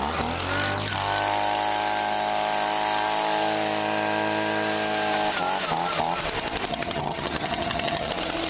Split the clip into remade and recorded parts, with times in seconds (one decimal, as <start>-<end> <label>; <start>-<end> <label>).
0.0-6.7 recorded; 6.7-8.1 remade; 8.1-8.5 recorded